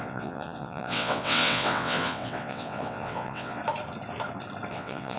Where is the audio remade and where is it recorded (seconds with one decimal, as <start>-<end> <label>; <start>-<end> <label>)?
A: 0.0-3.6 remade; 3.6-4.7 recorded; 4.7-5.2 remade